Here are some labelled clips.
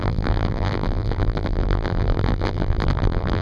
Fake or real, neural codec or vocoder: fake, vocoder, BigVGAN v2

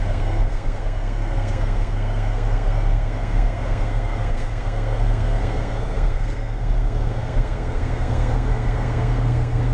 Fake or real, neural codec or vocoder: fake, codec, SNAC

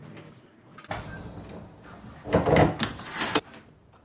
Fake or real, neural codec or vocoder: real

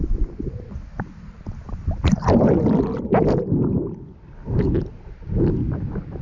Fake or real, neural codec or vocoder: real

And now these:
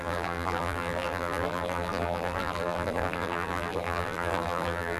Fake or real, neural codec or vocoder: fake, vocoder, BigVGAN v2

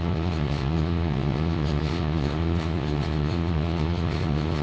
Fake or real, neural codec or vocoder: fake, vocoder, Vocos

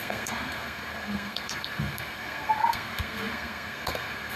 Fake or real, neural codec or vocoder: fake, codec, SNAC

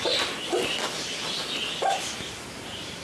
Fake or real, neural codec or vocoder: real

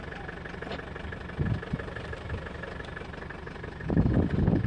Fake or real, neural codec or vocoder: real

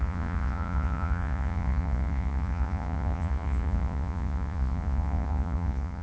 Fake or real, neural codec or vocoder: fake, vocoder, Vocos